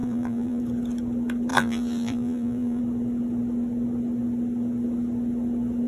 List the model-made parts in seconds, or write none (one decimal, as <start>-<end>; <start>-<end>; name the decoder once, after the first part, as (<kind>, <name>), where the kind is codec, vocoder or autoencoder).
0.0-0.6 (vocoder, BigVGAN v2); 1.5-2.8